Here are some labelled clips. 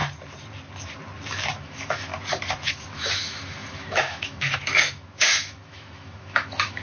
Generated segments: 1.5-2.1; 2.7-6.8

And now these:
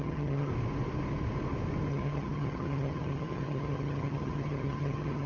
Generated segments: 0.0-0.5; 1.9-5.3